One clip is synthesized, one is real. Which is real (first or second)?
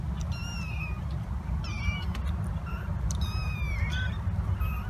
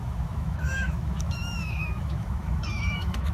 first